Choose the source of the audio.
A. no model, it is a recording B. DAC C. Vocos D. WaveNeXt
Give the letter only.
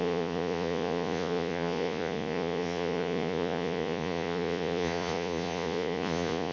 C